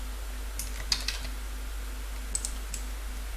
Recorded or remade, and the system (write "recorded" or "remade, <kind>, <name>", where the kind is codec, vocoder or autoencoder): recorded